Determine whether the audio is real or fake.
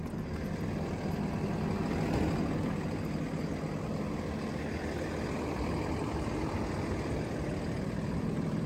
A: real